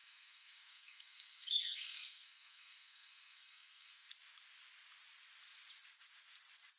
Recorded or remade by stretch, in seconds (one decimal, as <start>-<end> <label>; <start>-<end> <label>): 0.0-4.1 remade; 4.1-6.8 recorded